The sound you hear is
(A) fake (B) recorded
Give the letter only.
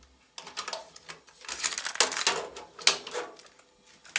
B